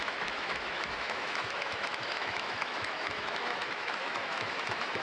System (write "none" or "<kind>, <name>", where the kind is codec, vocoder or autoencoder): autoencoder, DAC-VAE